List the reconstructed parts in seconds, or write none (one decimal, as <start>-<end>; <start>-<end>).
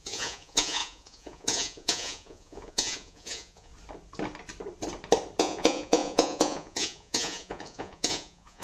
0.0-3.7; 5.4-8.6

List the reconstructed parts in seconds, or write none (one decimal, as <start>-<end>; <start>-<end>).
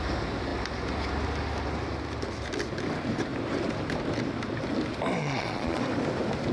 5.2-5.8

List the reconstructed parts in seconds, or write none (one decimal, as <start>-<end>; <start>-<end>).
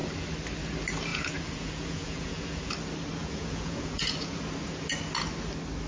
1.1-2.7; 3.2-4.5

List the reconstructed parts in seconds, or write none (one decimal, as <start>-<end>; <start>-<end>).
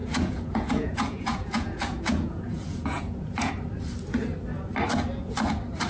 0.0-3.5